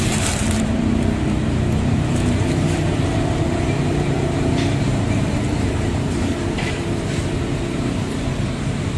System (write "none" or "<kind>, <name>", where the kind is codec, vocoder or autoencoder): vocoder, BigVGAN v2